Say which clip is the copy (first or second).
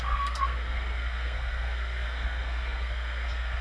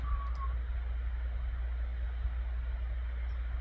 first